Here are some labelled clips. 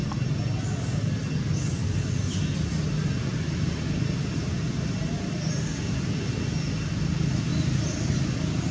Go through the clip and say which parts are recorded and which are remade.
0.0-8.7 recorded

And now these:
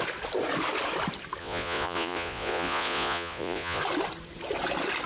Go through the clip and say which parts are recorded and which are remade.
0.0-1.4 recorded; 1.4-3.8 remade; 3.8-5.1 recorded